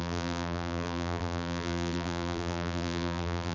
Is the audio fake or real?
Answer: fake